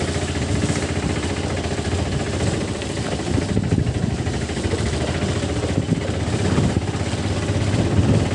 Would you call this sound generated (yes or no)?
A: no